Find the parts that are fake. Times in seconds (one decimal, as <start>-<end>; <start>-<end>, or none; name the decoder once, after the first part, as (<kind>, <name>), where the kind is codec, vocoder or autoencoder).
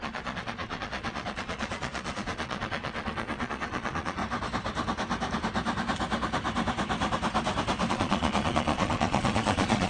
0.0-4.2 (vocoder, Vocos); 7.9-9.9